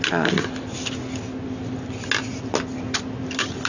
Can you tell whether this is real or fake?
real